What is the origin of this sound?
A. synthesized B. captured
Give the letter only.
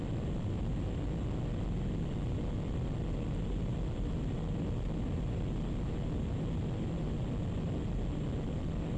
B